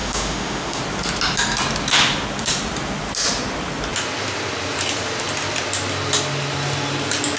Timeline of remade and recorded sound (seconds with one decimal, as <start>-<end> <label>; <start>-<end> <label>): 0.0-0.8 remade; 0.8-7.4 recorded